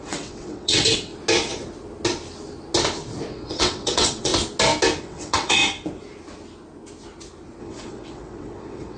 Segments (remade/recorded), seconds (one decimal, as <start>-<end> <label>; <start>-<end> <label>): 0.0-1.1 remade; 1.1-3.3 recorded; 3.3-4.3 remade; 4.3-5.0 recorded; 5.0-5.6 remade; 5.6-7.6 recorded; 7.6-9.0 remade